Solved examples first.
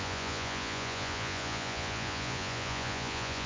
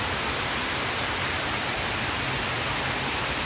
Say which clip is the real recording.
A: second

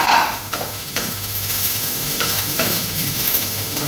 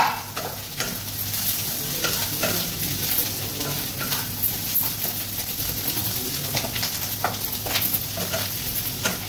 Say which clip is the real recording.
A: second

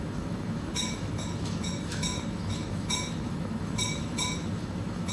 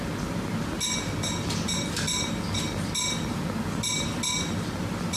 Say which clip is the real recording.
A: second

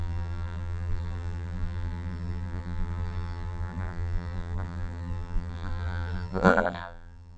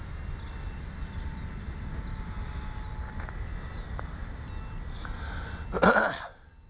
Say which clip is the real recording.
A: second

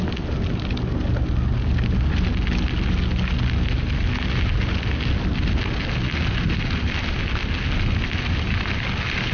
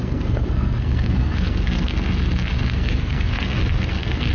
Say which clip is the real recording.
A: first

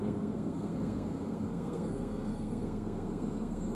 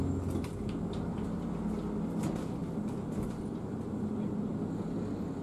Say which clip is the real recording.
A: second